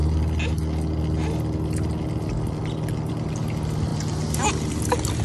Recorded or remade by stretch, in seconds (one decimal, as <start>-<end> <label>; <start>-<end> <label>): 0.0-5.2 recorded